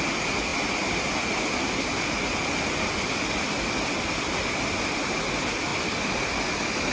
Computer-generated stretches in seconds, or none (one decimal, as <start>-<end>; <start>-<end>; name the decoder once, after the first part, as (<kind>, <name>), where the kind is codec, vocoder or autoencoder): none